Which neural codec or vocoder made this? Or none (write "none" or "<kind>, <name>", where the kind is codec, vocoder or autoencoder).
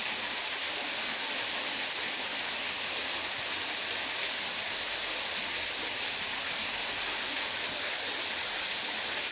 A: none